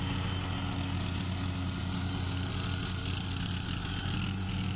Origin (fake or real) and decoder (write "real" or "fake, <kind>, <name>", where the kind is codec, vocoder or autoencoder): real